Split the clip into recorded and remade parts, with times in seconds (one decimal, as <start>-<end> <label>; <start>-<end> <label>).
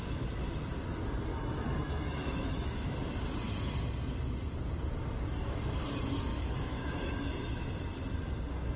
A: 0.0-1.3 recorded; 1.3-2.9 remade; 2.9-6.3 recorded; 6.3-7.7 remade; 7.7-8.8 recorded